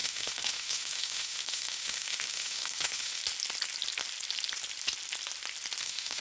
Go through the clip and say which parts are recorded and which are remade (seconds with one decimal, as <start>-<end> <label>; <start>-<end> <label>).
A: 0.0-3.2 remade; 3.2-5.8 recorded; 5.8-6.2 remade